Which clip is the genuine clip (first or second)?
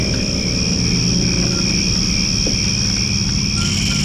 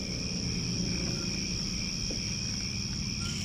first